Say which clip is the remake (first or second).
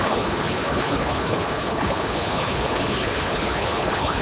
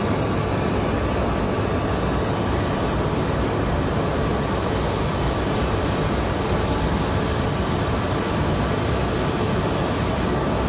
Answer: first